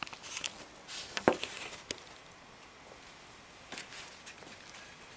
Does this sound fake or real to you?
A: real